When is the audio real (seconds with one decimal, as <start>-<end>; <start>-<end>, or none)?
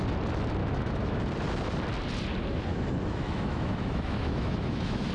0.0-0.6; 1.2-2.7